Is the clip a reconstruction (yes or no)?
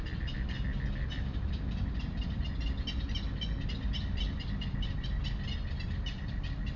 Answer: no